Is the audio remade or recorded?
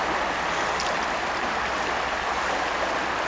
recorded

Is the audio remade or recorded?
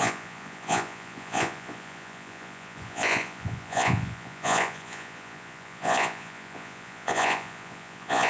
remade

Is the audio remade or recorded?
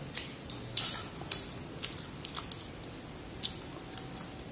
recorded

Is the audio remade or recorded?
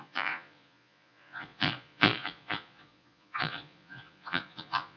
remade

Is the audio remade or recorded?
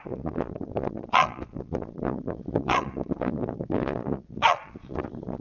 remade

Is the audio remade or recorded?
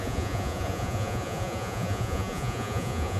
remade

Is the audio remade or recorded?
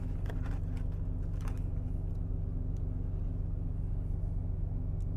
recorded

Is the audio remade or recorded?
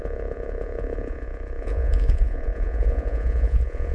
remade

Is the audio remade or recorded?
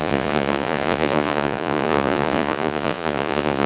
remade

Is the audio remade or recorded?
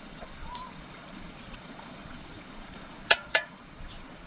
remade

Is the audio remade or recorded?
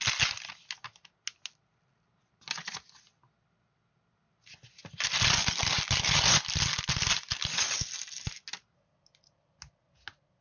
recorded